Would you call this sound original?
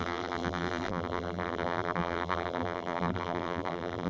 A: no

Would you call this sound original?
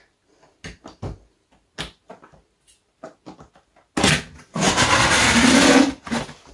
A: yes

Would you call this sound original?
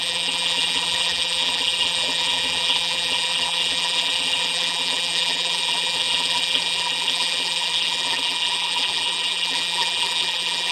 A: no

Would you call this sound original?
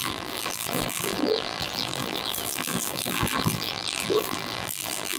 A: no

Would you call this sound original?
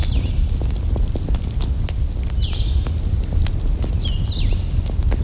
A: yes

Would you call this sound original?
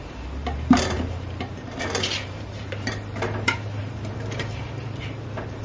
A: no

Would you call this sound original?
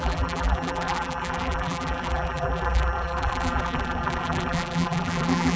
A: no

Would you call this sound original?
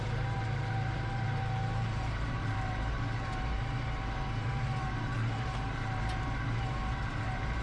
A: no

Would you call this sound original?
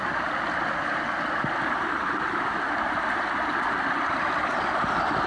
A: no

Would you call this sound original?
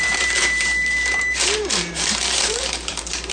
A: no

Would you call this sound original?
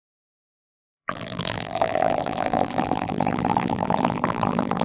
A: no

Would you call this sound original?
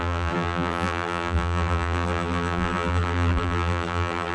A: no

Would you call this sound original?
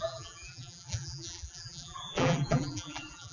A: no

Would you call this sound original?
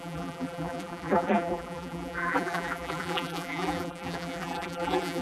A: no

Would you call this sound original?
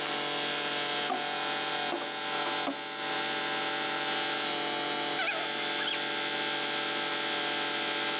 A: yes